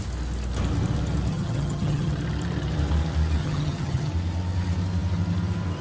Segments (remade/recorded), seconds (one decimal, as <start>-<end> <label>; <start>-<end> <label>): 0.0-1.3 recorded; 1.3-2.1 remade; 2.1-3.4 recorded; 3.4-4.1 remade; 4.1-5.8 recorded